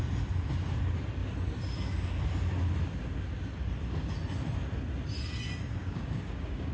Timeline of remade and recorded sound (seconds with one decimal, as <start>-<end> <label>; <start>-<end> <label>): 0.0-5.8 recorded; 5.8-6.7 remade